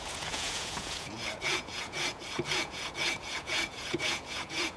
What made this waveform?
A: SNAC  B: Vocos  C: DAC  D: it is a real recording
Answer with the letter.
B